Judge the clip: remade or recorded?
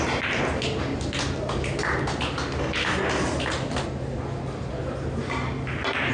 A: recorded